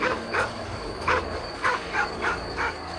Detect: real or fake fake